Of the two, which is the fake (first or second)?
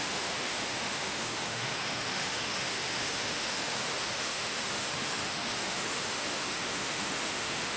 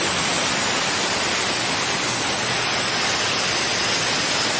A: first